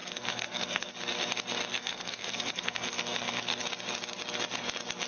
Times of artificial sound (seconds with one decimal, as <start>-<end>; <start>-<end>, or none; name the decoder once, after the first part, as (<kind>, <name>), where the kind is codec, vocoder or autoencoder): 0.0-0.9 (codec, SNAC); 1.7-3.6